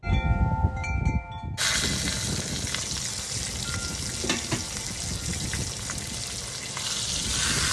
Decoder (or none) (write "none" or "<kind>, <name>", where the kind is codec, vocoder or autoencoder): none